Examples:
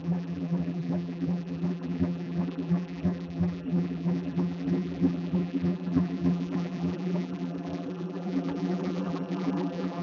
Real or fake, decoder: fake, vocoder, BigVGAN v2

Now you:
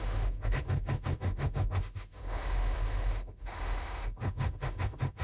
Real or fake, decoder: fake, autoencoder, DAC-VAE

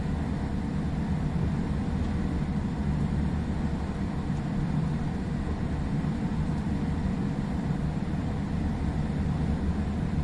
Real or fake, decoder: fake, vocoder, BigVGAN v2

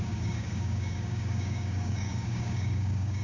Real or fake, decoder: fake, codec, DAC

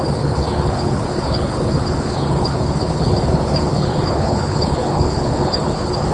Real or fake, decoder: fake, codec, HILCodec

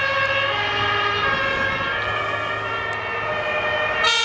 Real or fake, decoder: real